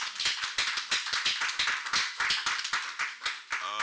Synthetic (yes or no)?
no